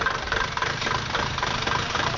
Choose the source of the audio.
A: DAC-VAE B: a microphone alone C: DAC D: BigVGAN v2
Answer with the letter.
D